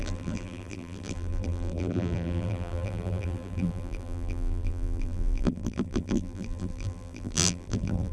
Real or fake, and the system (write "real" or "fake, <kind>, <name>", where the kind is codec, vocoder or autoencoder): fake, vocoder, BigVGAN v2